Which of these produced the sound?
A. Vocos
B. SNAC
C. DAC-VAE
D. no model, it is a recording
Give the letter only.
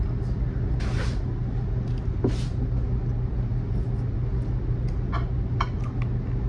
D